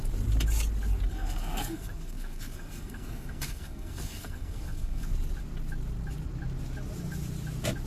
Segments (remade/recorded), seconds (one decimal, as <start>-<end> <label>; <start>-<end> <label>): 0.0-1.1 recorded; 1.1-5.1 remade; 5.1-7.9 recorded